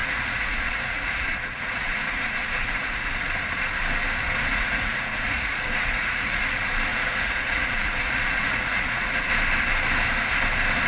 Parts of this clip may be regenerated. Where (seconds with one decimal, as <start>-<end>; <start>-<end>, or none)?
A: 0.0-3.1; 4.5-6.4; 6.9-9.3